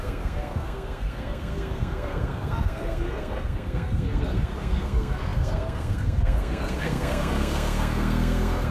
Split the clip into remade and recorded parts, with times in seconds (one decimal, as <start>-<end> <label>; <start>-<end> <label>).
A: 0.0-8.7 remade